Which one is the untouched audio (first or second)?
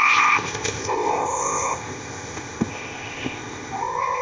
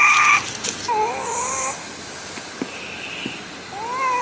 second